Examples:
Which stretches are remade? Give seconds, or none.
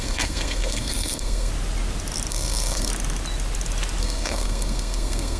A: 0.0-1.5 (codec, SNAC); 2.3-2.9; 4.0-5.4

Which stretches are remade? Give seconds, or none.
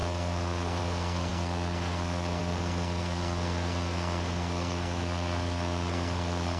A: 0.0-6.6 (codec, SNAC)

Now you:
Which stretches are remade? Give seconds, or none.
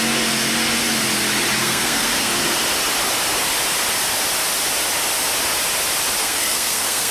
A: 1.6-2.3 (codec, SNAC); 6.2-7.1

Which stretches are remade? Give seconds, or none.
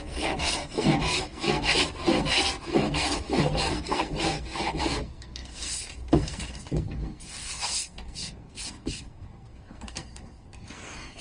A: 0.0-11.2 (codec, SNAC)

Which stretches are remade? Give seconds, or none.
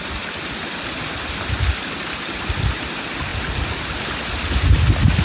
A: none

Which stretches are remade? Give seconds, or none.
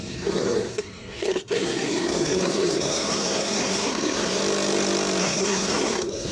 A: 0.0-4.4 (codec, SNAC); 5.2-6.3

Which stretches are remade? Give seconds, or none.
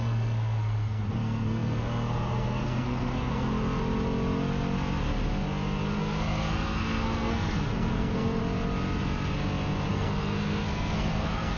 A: 0.0-3.5 (codec, SNAC); 6.0-8.4; 9.9-11.6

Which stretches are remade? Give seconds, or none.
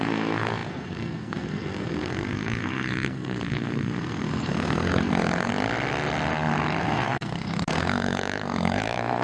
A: 0.0-5.5 (codec, SNAC); 6.8-9.2